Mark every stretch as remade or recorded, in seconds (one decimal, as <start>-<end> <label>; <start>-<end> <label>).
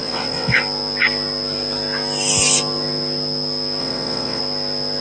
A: 0.0-0.6 remade; 0.6-3.8 recorded; 3.8-4.4 remade; 4.4-5.0 recorded